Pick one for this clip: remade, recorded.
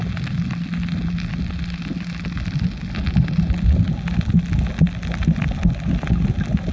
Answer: recorded